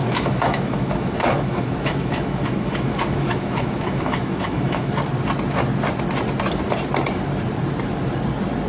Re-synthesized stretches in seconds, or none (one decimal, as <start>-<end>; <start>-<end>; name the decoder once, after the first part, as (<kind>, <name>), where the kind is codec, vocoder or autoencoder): 0.0-4.9 (autoencoder, DAC-VAE)